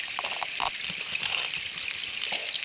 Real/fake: real